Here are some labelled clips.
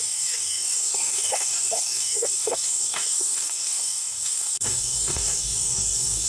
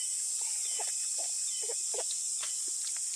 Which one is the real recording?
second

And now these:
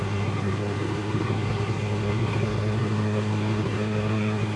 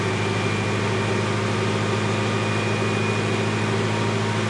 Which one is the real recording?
second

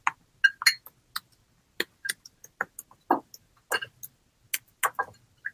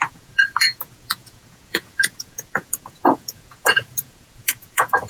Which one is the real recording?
first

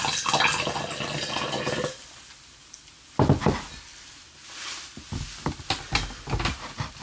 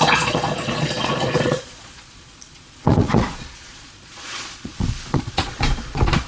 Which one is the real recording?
first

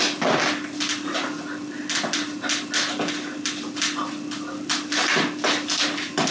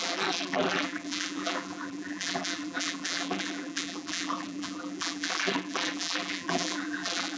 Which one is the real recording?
first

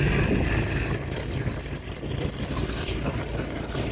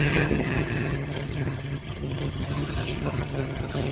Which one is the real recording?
first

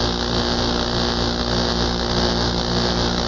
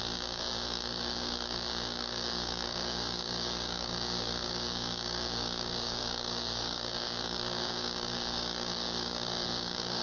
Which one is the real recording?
first